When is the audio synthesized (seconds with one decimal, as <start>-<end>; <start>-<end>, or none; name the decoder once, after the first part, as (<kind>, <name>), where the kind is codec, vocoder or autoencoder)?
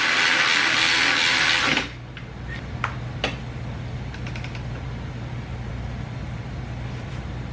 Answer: none